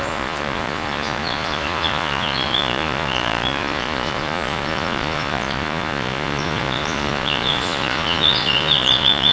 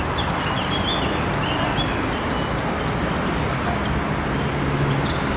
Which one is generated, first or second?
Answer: first